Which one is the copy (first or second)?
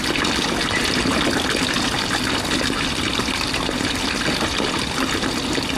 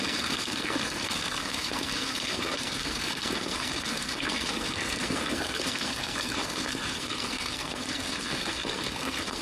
second